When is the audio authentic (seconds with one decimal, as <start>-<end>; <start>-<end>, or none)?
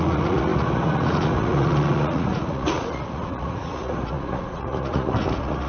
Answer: none